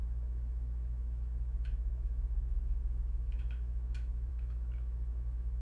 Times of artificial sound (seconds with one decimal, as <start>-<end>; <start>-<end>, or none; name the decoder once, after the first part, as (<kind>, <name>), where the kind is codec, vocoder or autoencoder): 0.0-5.6 (autoencoder, DAC-VAE)